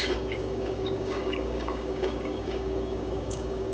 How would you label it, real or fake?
fake